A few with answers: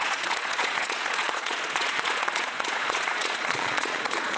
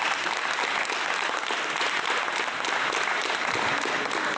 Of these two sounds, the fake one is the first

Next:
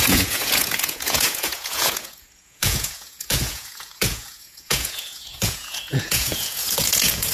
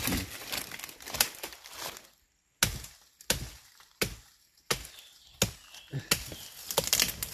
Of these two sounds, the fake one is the first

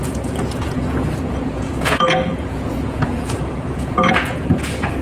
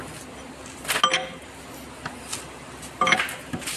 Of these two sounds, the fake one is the first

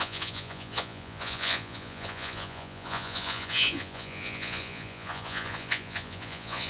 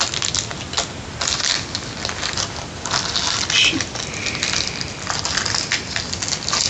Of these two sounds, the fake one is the first